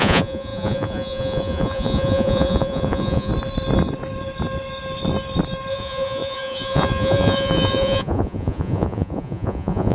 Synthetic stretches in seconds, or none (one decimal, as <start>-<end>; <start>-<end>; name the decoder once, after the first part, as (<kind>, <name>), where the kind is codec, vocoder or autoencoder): 0.0-3.3 (vocoder, Vocos); 5.7-9.9